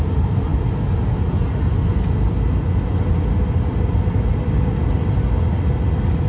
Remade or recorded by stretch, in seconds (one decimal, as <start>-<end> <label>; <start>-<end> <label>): 0.0-6.3 recorded